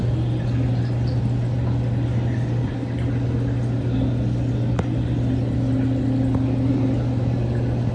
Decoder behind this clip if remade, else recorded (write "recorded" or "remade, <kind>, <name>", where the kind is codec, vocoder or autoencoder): recorded